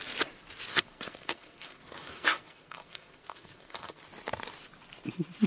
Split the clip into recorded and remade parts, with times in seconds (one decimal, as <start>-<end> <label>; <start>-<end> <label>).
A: 0.0-0.7 recorded; 0.7-4.0 remade; 4.0-5.5 recorded